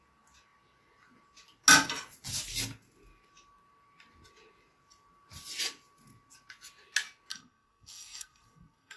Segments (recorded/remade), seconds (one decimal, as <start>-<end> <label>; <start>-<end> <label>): 0.0-7.3 recorded; 7.3-9.0 remade